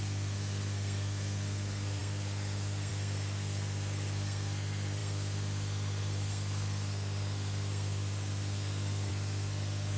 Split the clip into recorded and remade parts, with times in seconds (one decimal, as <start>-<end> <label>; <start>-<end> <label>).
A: 0.0-10.0 remade